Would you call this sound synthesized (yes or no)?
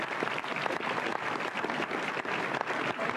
no